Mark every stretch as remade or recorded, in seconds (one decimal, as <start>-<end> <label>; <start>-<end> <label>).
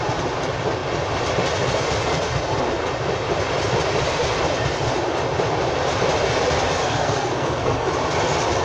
0.0-6.8 recorded; 6.8-7.9 remade; 7.9-8.6 recorded